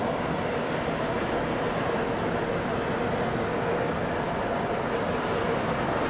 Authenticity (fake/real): real